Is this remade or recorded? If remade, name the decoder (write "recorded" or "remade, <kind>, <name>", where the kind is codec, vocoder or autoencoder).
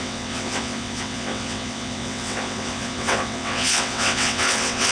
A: remade, vocoder, WaveNeXt